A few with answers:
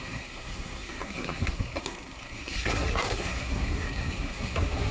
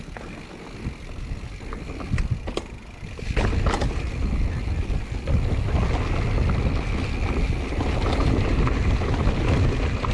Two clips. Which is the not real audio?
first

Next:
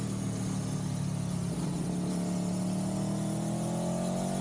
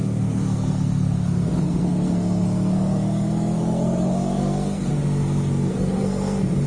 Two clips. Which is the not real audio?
second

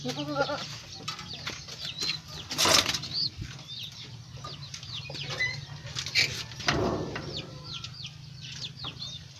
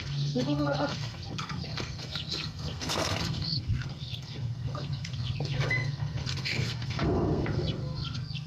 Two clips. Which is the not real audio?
second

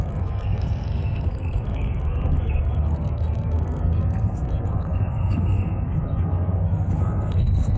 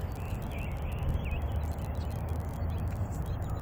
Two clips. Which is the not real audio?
first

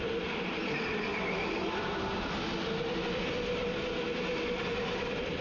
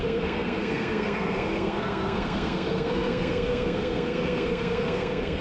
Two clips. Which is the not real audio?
second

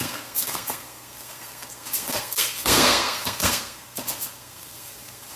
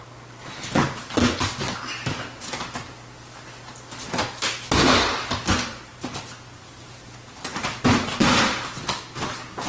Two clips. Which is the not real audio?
first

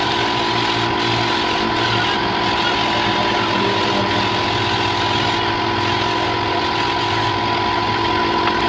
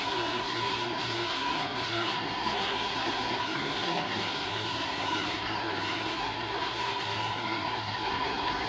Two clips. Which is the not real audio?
second